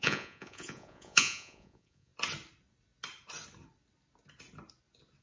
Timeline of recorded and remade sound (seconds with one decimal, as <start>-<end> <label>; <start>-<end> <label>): 0.0-2.1 remade; 2.1-5.2 recorded